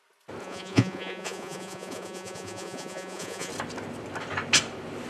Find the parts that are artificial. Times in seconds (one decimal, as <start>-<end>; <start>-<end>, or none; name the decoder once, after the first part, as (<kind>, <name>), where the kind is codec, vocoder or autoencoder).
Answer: 0.4-3.5 (vocoder, Vocos)